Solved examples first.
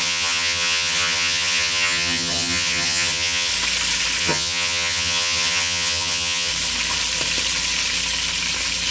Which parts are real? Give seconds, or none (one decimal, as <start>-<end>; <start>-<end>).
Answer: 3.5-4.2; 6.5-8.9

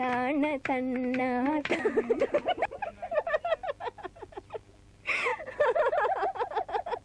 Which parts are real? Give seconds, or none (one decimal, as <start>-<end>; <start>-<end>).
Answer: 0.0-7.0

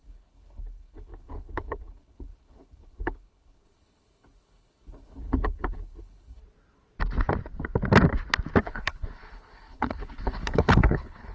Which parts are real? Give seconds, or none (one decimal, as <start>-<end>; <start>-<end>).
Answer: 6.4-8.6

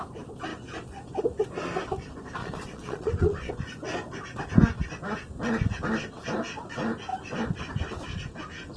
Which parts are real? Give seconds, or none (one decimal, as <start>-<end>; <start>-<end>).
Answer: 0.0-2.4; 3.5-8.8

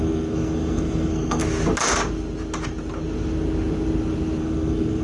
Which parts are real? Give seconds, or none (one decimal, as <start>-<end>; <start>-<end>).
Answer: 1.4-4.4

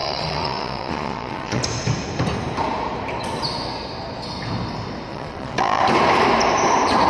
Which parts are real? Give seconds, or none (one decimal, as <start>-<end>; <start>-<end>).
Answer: 1.6-5.1; 5.8-7.1

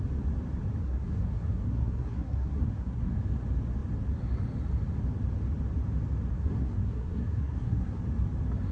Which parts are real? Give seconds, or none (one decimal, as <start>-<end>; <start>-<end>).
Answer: 0.0-0.8; 3.2-6.3; 8.0-8.7